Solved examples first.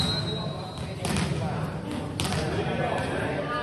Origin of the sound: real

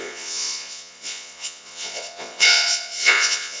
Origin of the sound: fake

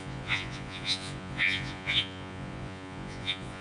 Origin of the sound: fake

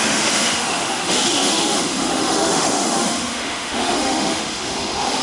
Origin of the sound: fake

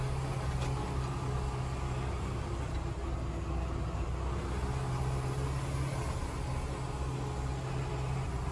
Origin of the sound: real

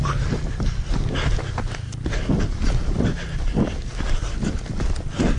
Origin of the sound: real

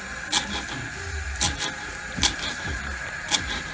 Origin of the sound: real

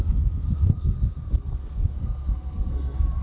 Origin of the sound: fake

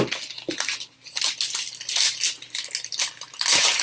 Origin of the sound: real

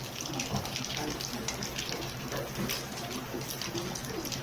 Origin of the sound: real